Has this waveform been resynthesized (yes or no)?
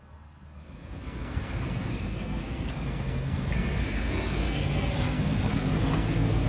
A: yes